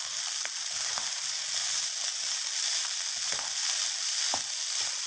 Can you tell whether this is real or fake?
real